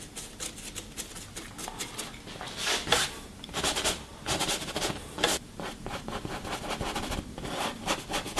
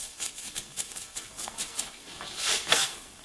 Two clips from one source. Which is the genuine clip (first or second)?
first